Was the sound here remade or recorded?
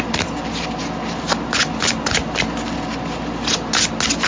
recorded